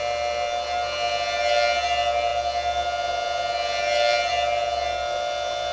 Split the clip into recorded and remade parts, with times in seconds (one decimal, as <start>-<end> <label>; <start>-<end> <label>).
0.0-5.7 recorded